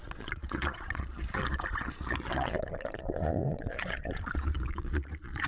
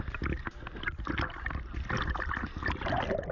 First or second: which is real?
second